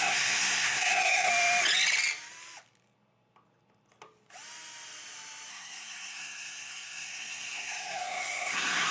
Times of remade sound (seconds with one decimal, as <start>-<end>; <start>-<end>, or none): 0.0-1.3; 5.5-8.9